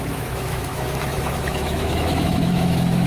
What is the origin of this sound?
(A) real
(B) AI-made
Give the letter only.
B